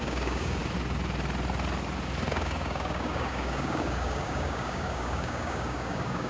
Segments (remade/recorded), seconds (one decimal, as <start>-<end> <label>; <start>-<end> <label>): 0.0-0.6 remade; 0.6-2.3 recorded; 2.3-6.3 remade